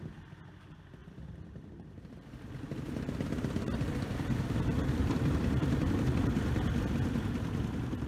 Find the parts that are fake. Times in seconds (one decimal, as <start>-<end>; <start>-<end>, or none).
1.0-5.9